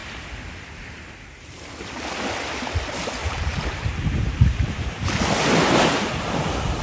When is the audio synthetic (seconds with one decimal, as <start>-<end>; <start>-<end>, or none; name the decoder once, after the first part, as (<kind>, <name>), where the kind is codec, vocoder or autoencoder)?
3.2-5.1 (vocoder, BigVGAN v2)